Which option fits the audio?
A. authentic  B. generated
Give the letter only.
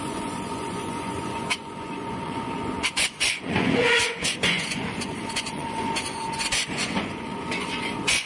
B